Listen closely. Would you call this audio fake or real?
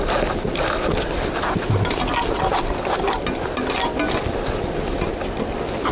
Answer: real